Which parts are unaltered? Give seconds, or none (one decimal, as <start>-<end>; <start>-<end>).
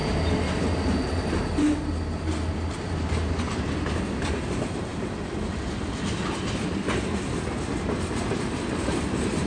0.0-9.5